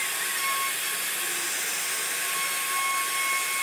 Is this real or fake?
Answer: real